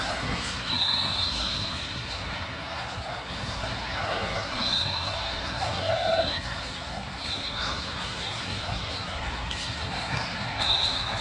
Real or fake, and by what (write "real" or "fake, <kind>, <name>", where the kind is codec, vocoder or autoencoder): fake, codec, SNAC